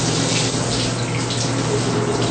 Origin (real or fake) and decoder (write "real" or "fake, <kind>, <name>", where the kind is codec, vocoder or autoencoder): real